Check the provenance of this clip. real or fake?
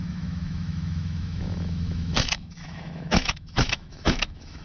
fake